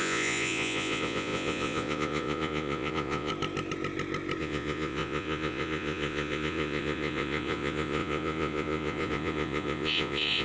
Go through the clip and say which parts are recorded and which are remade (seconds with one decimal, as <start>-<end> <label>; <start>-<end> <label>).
0.0-3.3 remade; 3.3-4.4 recorded; 4.4-10.4 remade

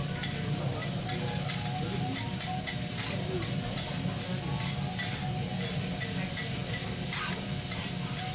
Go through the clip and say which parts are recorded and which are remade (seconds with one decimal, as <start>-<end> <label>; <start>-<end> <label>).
0.0-8.3 recorded

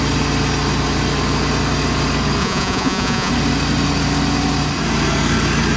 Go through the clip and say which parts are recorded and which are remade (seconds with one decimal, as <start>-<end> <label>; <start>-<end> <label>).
0.0-2.4 recorded; 2.4-3.3 remade; 3.3-5.8 recorded